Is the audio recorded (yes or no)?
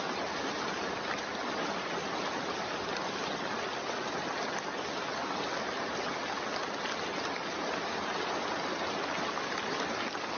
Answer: yes